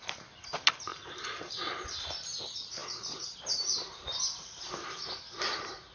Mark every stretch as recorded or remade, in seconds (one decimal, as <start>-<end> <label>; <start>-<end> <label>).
0.0-0.9 recorded; 0.9-2.3 remade; 2.3-2.8 recorded; 2.8-4.7 remade; 4.7-5.9 recorded